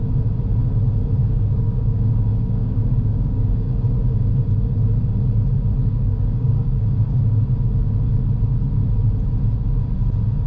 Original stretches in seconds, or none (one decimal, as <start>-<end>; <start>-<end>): 0.0-1.2; 3.9-5.8; 7.2-10.5